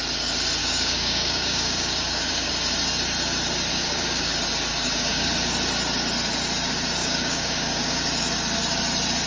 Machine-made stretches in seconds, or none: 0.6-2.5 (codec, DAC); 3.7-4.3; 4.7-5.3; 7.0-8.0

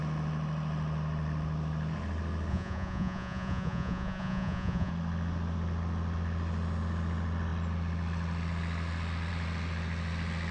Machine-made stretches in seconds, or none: 2.5-4.9 (vocoder, Vocos)

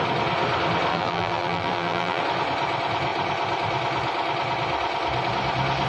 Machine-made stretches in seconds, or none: 0.9-2.2 (vocoder, BigVGAN v2)

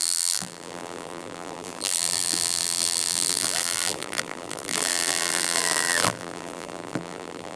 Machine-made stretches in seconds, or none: 0.0-7.6 (vocoder, BigVGAN v2)